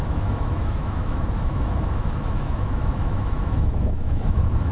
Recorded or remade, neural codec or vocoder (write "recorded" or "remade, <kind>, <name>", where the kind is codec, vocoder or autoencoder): remade, autoencoder, DAC-VAE